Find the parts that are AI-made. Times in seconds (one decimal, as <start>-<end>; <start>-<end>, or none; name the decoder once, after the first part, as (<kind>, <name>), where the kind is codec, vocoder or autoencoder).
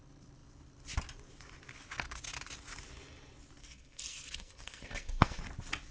3.6-5.4 (codec, SNAC)